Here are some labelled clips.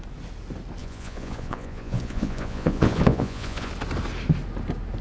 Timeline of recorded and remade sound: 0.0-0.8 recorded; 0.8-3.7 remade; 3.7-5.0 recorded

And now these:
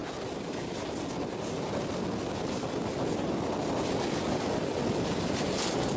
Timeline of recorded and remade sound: 0.0-6.0 recorded

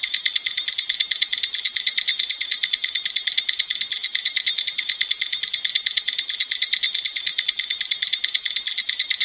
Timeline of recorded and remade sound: 0.0-9.2 recorded